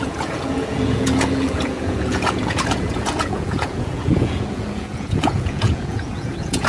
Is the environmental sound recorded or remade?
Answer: remade